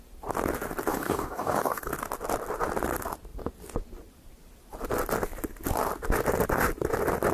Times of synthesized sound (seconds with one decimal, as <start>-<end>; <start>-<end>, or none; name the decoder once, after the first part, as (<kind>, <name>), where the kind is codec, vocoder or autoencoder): 0.9-1.9 (codec, DAC)